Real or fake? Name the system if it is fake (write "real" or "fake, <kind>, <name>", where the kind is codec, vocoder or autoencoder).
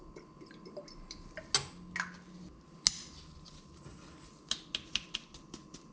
real